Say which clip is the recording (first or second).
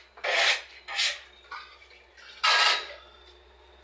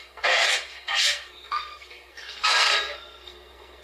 first